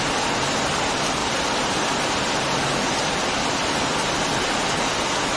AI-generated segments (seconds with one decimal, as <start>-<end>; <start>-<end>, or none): none